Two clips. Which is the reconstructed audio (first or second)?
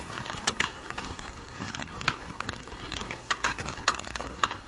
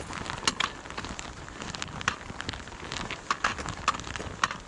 first